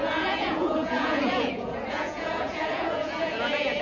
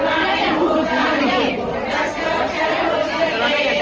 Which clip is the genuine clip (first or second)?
second